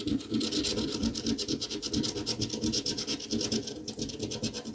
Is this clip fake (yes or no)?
no